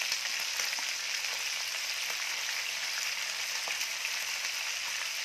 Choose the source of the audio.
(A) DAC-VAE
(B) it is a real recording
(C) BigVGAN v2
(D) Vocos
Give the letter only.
B